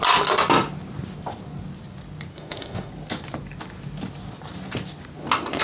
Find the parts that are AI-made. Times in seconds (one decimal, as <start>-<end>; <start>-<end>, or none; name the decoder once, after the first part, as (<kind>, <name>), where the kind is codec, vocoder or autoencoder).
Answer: 2.3-2.9 (autoencoder, DAC-VAE)